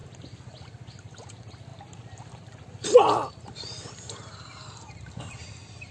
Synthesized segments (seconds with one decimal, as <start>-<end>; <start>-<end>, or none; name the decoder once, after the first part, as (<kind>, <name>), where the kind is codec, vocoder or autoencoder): none